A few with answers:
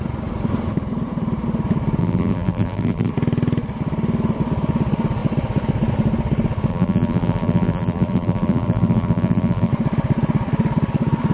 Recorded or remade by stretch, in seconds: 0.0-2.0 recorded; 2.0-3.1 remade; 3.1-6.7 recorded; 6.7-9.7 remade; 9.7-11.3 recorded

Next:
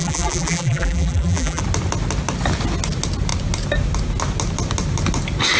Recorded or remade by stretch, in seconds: 0.0-1.6 remade; 1.6-5.6 recorded

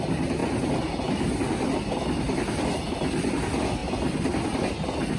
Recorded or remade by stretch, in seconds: 0.0-5.2 recorded

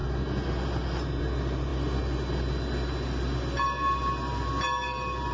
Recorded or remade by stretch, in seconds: 0.0-5.3 recorded

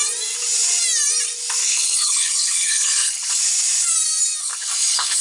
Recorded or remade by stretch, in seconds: 0.0-1.6 recorded; 1.6-3.4 remade; 3.4-4.4 recorded; 4.4-5.2 remade

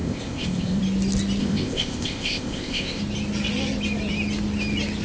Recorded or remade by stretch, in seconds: 0.0-0.8 remade; 0.8-1.4 recorded; 1.4-3.0 remade; 3.0-5.0 recorded

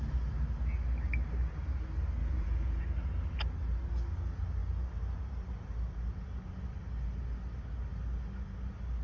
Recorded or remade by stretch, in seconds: 0.0-2.2 recorded; 2.2-2.8 remade; 2.8-9.0 recorded

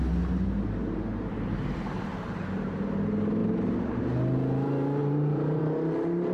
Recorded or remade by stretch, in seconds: 0.0-0.8 recorded; 0.8-2.4 remade; 2.4-3.4 recorded; 3.4-4.0 remade; 4.0-5.0 recorded; 5.0-5.6 remade; 5.6-6.3 recorded